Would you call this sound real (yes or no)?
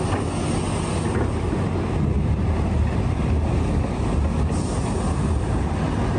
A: yes